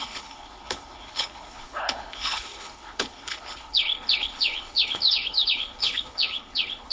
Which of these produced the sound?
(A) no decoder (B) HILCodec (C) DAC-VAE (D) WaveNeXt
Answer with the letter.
B